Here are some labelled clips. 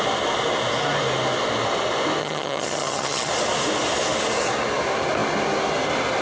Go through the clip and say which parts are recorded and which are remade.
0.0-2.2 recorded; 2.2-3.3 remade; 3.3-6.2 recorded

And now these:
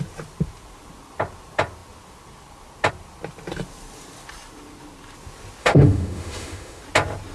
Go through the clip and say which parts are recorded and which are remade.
0.0-5.6 recorded; 5.6-6.8 remade; 6.8-7.3 recorded

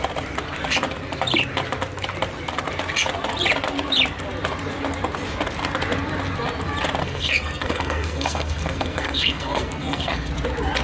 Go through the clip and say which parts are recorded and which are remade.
0.0-7.0 recorded; 7.0-10.3 remade; 10.3-10.8 recorded

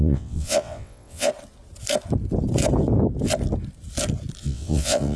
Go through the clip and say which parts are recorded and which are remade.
0.0-1.3 remade; 1.3-4.4 recorded; 4.4-5.2 remade

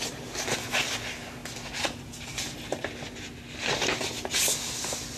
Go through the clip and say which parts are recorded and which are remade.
0.0-5.2 recorded

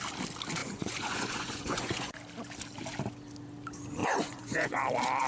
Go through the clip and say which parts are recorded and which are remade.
0.0-0.6 recorded; 0.6-2.1 remade; 2.1-4.0 recorded; 4.0-4.8 remade; 4.8-5.3 recorded

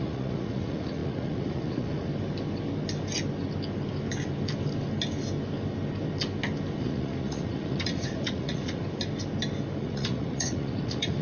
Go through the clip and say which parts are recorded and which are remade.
0.0-2.1 remade; 2.1-6.8 recorded; 6.8-8.8 remade; 8.8-9.8 recorded; 9.8-11.2 remade

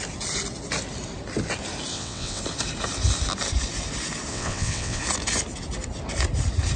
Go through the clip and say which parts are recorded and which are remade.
0.0-1.9 recorded; 1.9-2.4 remade; 2.4-4.3 recorded; 4.3-5.0 remade; 5.0-6.8 recorded